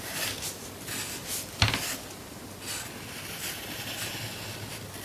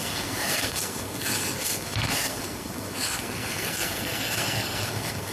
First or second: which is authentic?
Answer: first